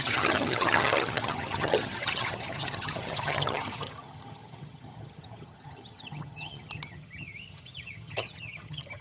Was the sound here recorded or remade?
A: remade